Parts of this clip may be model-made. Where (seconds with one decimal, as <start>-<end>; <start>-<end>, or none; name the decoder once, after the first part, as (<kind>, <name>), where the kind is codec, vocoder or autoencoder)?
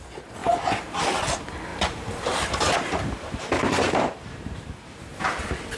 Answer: 0.4-1.0 (vocoder, BigVGAN v2); 1.7-5.2